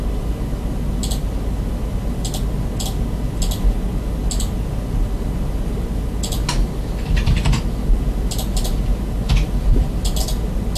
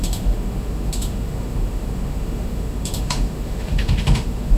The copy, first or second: second